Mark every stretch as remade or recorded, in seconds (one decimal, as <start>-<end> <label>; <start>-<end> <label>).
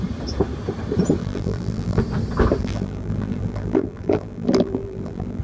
0.0-1.2 recorded; 1.2-2.0 remade; 2.0-2.6 recorded; 2.6-5.4 remade